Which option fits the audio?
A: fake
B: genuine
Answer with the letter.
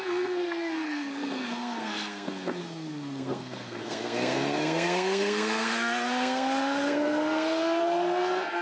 A